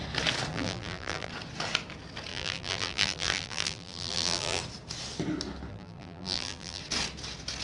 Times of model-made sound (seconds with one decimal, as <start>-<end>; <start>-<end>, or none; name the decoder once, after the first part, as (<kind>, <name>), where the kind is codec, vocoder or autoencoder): 0.5-1.3 (vocoder, BigVGAN v2); 2.3-4.6; 5.7-6.8